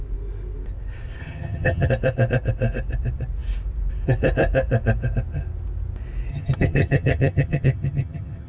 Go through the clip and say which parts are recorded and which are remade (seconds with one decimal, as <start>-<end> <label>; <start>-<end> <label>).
0.0-1.2 recorded; 1.2-1.9 remade; 1.9-6.3 recorded; 6.3-8.5 remade